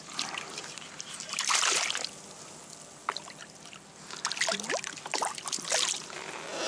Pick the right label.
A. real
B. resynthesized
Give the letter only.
A